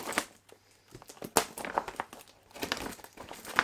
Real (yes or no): yes